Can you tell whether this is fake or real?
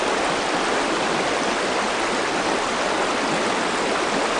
real